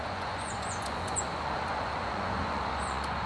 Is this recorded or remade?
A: remade